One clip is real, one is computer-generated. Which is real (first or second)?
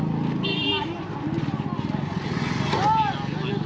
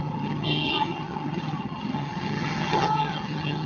first